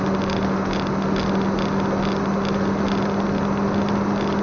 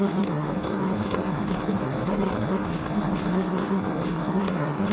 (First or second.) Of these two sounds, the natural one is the first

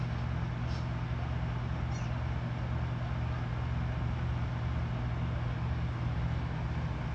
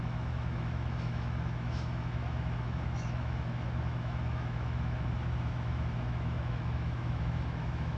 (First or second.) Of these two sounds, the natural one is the first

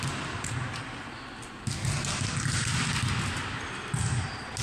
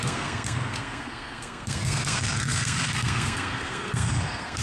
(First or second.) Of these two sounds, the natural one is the first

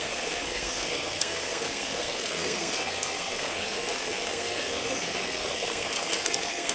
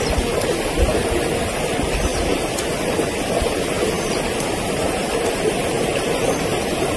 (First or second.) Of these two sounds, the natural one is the second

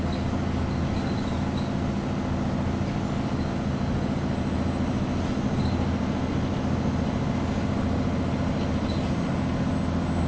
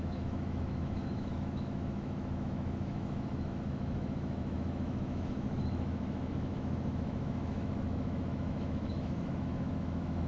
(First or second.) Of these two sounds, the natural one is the first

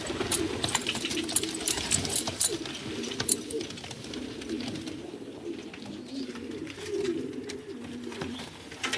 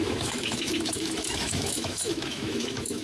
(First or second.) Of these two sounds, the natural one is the first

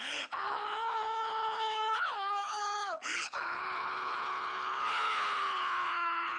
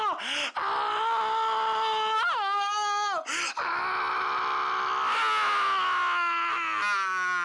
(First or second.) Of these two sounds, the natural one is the second